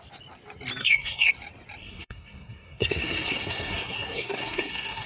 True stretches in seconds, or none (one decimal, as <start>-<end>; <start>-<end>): 0.0-0.8; 1.3-1.8